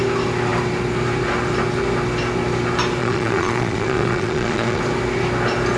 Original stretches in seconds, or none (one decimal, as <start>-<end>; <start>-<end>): 0.0-3.0; 4.8-5.8